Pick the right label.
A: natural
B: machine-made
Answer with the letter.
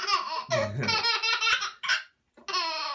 A